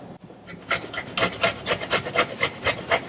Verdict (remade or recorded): recorded